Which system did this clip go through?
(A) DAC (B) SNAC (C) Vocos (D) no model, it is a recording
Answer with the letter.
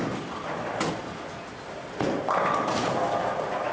D